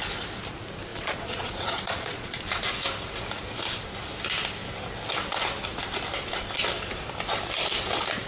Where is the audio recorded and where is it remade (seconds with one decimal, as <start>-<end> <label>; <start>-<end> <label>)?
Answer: 0.0-0.9 recorded; 0.9-2.6 remade; 2.6-8.3 recorded